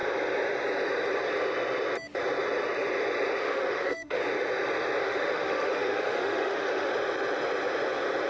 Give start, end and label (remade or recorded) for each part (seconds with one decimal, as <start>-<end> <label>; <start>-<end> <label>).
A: 0.0-3.4 recorded; 3.4-4.2 remade; 4.2-5.0 recorded; 5.0-6.9 remade; 6.9-8.3 recorded